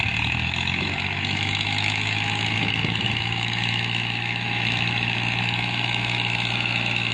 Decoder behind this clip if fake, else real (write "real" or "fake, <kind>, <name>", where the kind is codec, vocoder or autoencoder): fake, autoencoder, DAC-VAE